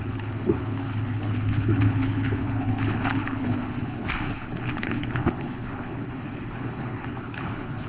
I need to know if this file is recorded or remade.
remade